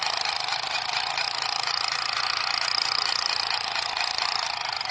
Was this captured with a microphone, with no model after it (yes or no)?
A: yes